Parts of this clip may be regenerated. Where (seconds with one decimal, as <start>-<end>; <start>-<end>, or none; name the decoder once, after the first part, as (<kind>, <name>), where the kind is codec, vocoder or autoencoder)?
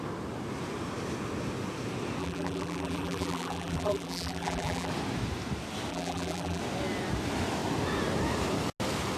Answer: 2.2-4.9 (vocoder, BigVGAN v2); 5.9-6.6